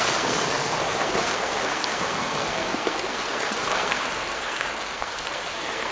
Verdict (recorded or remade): remade